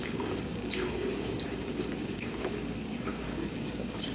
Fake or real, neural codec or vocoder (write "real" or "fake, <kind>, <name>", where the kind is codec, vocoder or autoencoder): fake, codec, DAC